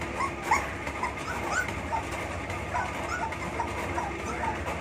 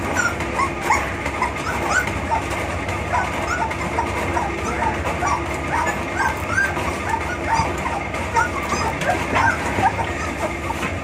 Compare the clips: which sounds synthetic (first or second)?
first